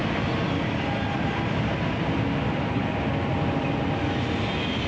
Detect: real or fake real